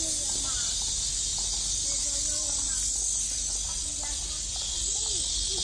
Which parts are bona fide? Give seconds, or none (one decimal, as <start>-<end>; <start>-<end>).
0.0-5.6